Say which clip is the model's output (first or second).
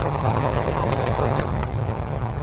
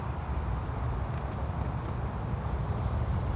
first